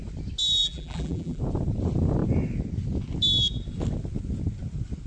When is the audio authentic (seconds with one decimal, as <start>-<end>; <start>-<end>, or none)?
0.0-0.6; 1.4-5.1